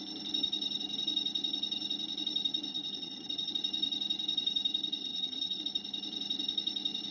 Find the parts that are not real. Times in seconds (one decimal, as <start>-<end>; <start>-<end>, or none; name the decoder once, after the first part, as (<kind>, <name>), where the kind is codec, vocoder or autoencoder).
2.7-3.5 (vocoder, HiFi-GAN); 5.0-5.6